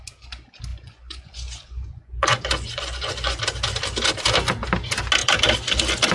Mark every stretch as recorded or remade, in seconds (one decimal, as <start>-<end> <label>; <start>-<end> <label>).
0.0-0.7 recorded; 0.7-3.4 remade; 3.4-6.1 recorded